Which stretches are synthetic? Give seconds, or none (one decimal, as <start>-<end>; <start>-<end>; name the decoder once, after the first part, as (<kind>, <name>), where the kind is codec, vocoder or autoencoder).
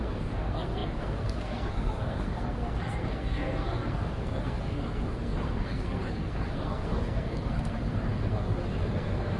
0.0-9.4 (codec, SNAC)